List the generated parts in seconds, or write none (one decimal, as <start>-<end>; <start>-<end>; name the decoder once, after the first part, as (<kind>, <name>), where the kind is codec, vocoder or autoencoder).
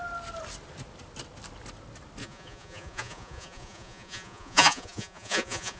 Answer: 2.2-5.8 (vocoder, Vocos)